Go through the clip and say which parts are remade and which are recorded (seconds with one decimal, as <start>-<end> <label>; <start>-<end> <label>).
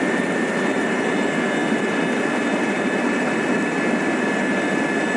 0.0-5.2 recorded